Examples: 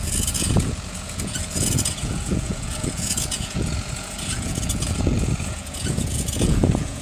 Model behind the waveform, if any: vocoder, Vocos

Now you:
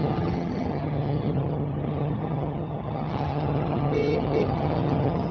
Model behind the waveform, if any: vocoder, HiFi-GAN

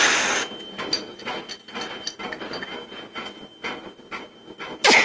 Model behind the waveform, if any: none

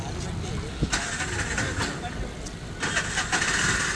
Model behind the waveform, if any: none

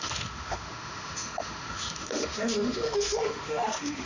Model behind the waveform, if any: autoencoder, DAC-VAE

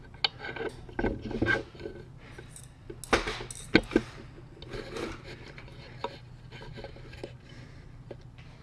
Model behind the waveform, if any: none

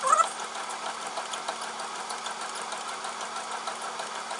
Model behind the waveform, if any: none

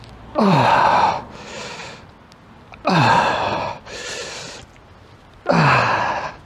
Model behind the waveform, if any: none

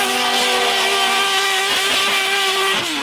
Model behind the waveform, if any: none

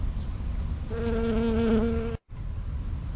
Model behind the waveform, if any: none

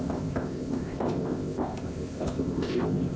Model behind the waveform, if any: codec, ZipCodec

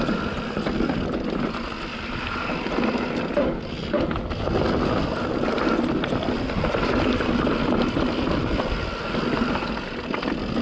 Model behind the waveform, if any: none